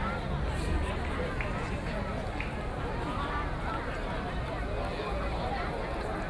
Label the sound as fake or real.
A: real